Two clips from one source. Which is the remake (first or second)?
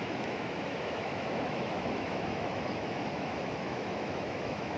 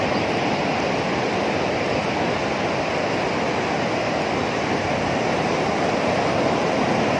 first